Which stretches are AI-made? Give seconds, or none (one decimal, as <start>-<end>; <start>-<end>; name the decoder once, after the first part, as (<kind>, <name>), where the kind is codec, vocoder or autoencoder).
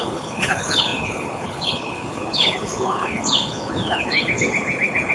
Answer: 0.0-5.1 (codec, HILCodec)